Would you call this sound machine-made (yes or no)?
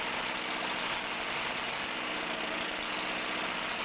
no